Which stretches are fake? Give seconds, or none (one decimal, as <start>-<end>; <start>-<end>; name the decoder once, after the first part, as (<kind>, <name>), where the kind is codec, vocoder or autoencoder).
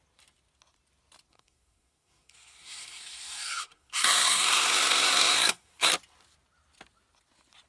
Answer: 1.3-5.9 (codec, SNAC)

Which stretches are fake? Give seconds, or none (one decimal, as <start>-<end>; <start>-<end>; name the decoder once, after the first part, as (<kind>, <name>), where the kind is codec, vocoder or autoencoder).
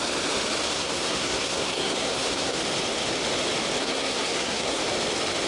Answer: 0.7-2.6 (codec, SNAC); 3.8-4.8